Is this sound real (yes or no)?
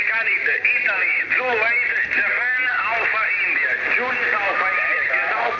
yes